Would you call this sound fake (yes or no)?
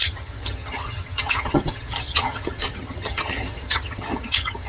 yes